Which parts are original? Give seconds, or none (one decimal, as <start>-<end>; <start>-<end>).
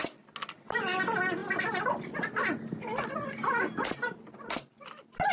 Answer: 0.0-5.3